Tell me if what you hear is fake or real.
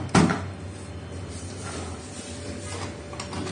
real